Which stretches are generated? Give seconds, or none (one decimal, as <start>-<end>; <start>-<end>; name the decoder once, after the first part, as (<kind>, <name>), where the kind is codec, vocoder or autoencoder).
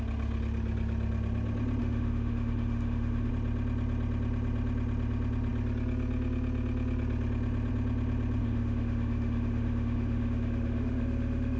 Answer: 1.8-3.3 (autoencoder, DAC-VAE); 8.4-11.6